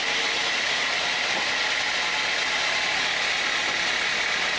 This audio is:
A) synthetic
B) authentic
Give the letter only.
B